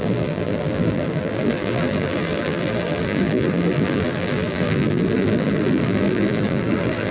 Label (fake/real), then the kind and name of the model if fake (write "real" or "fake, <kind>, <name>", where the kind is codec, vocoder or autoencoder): fake, vocoder, BigVGAN v2